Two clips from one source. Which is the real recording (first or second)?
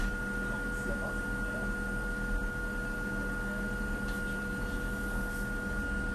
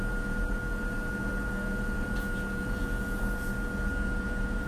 first